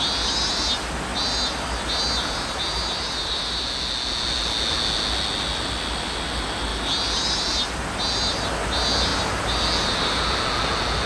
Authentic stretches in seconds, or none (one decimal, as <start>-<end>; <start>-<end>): 0.0-11.1